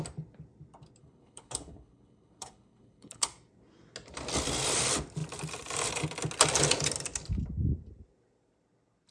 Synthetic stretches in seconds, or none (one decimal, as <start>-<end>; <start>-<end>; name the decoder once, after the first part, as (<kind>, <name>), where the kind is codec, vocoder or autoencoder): 1.0-3.3 (codec, HILCodec)